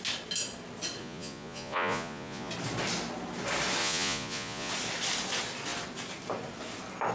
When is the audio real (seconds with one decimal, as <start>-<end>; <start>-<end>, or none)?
0.0-1.0; 2.5-3.8; 4.7-7.1